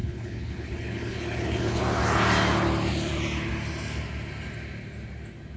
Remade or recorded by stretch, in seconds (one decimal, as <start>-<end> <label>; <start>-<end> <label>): 0.0-1.8 remade; 1.8-5.6 recorded